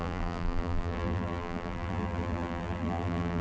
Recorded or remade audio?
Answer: remade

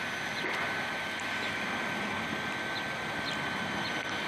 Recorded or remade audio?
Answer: recorded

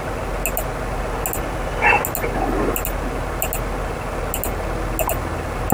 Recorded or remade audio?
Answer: recorded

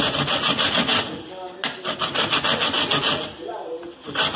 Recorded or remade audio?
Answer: recorded